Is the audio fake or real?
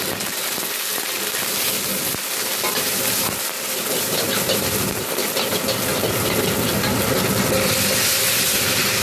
real